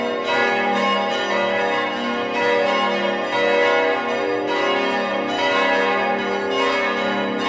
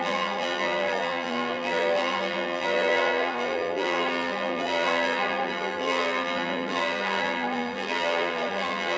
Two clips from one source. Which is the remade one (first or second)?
second